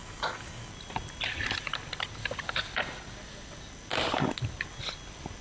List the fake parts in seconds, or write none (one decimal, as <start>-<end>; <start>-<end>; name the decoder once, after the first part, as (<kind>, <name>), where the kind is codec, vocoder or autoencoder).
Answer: 0.0-0.7 (codec, DAC)